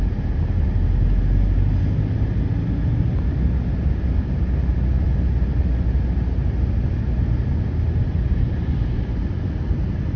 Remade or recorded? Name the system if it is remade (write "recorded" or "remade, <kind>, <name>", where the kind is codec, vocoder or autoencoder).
recorded